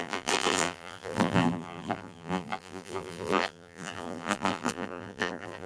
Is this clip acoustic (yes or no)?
no